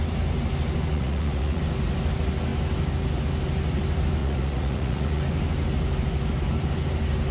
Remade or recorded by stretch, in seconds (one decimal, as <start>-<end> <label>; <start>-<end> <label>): 0.0-0.9 recorded; 0.9-1.6 remade; 1.6-4.2 recorded; 4.2-5.2 remade; 5.2-7.3 recorded